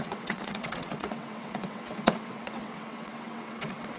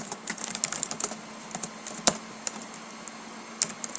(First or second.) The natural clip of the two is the second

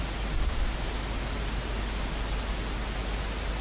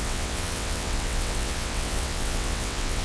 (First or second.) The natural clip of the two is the first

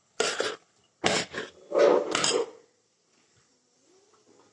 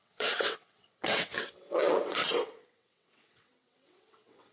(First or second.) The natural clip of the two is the first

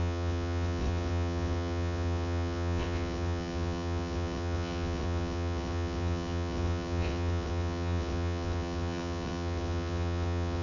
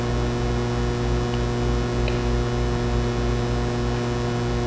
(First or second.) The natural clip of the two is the second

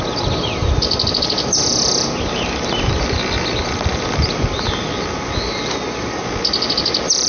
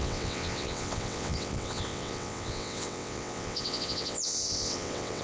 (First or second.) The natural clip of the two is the first